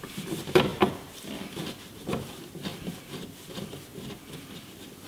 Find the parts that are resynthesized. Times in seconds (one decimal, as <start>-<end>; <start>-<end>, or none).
none

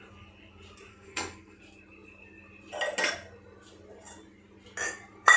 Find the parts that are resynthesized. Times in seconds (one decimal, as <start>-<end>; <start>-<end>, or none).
0.9-1.6

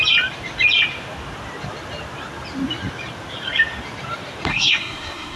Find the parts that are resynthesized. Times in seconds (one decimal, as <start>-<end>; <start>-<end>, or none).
4.5-5.4